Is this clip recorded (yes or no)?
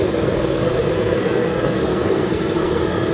no